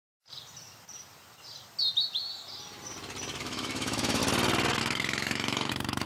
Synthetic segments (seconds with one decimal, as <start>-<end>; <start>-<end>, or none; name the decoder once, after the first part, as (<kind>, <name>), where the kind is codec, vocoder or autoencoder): 3.4-4.2 (autoencoder, DAC-VAE); 4.8-6.1